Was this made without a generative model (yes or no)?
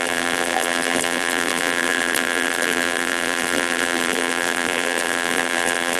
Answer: no